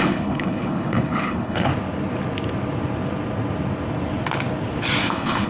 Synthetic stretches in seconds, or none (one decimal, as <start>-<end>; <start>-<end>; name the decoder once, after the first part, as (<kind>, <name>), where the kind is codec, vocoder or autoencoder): 0.0-1.7 (codec, HILCodec); 5.0-5.5